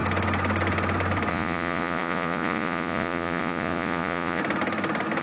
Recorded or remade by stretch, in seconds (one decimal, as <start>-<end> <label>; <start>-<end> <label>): 0.0-1.3 recorded; 1.3-4.4 remade; 4.4-5.2 recorded